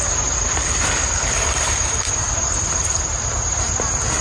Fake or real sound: real